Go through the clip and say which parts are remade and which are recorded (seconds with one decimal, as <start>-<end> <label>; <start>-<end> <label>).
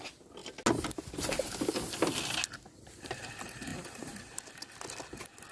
0.0-0.4 remade; 0.4-2.8 recorded; 2.8-3.7 remade; 3.7-5.5 recorded